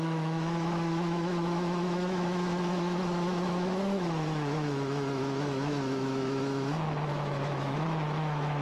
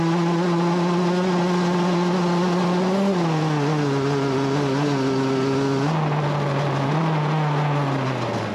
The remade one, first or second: first